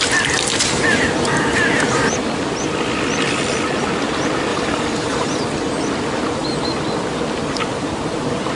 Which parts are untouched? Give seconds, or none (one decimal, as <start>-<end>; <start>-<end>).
0.0-4.5; 5.4-8.5